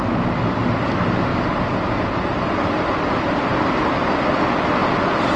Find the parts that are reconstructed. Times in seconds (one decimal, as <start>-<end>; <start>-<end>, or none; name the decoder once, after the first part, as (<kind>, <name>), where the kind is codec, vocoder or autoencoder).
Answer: none